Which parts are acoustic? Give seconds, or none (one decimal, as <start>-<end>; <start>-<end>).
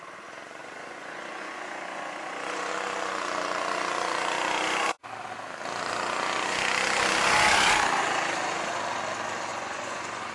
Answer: 0.0-0.6; 2.7-9.5